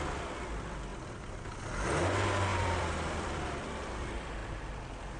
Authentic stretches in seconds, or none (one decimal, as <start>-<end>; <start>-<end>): 0.0-0.9; 1.6-2.5; 3.9-5.2

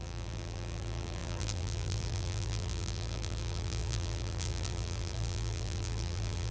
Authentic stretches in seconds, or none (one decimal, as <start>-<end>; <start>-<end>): none